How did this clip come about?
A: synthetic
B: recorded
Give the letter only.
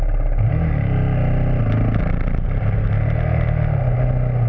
B